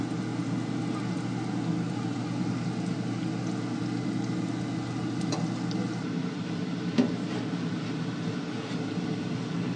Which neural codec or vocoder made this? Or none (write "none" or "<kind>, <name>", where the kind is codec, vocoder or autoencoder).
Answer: none